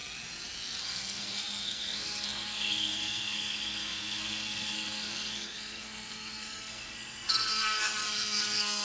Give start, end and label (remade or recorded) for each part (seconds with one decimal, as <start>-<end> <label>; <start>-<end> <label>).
0.0-0.8 recorded; 0.8-8.8 remade